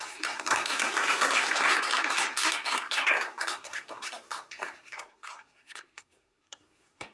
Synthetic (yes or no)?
yes